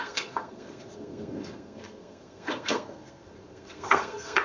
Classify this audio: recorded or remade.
remade